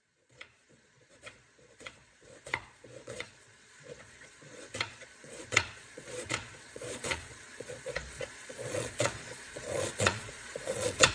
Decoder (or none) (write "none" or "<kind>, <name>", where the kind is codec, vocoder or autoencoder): vocoder, Vocos